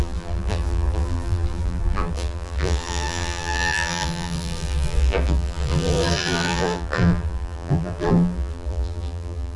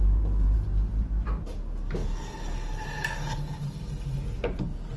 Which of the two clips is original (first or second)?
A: second